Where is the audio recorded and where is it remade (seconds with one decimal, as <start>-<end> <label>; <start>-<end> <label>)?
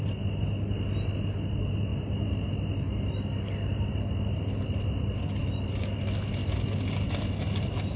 0.0-8.0 recorded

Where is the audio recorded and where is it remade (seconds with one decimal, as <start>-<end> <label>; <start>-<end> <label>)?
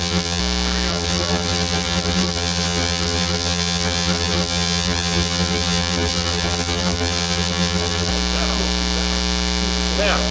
0.0-0.4 remade; 0.4-0.9 recorded; 0.9-8.1 remade; 8.1-10.3 recorded